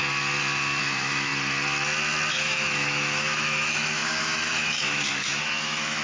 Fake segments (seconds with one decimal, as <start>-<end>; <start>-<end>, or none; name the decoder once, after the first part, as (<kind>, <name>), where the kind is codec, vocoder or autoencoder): 0.8-1.3 (autoencoder, DAC-VAE); 2.3-6.0